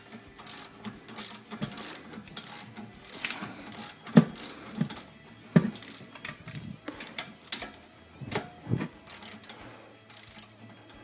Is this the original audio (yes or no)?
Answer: yes